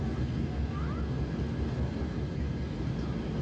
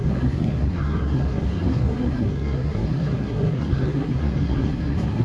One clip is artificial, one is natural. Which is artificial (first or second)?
second